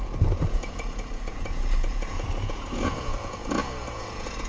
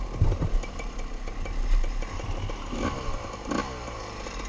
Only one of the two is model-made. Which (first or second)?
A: first